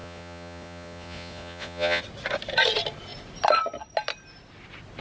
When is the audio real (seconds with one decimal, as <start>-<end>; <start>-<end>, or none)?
2.0-5.0